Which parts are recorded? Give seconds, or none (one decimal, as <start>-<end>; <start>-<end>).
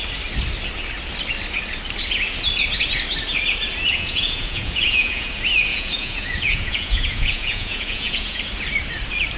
0.0-3.9; 5.3-5.7; 8.4-9.4